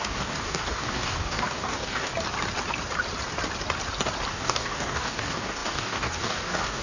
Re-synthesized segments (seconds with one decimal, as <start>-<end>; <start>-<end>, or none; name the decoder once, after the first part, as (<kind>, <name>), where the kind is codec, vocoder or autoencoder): 0.0-2.1 (codec, DAC); 4.3-6.8